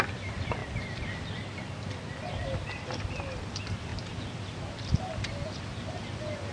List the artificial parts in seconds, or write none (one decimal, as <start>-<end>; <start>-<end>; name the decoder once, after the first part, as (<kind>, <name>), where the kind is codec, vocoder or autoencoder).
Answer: none